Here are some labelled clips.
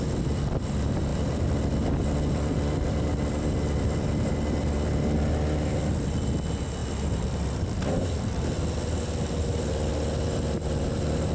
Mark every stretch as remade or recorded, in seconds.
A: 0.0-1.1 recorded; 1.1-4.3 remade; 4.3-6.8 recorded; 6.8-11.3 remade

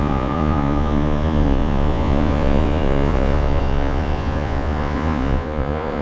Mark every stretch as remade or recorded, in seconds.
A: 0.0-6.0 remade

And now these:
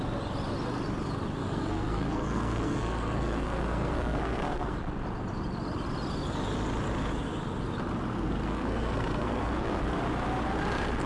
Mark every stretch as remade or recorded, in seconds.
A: 0.0-1.4 recorded; 1.4-4.8 remade; 4.8-8.1 recorded; 8.1-9.8 remade; 9.8-11.1 recorded